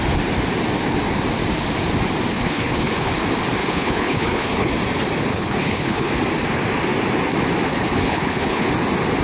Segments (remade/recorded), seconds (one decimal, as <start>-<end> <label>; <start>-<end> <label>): 0.0-2.3 recorded; 2.3-3.1 remade; 3.1-3.6 recorded; 3.6-4.7 remade; 4.7-5.3 recorded; 5.3-6.1 remade; 6.1-7.7 recorded; 7.7-8.7 remade; 8.7-9.2 recorded